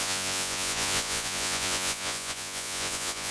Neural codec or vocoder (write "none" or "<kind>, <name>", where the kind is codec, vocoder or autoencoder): vocoder, Vocos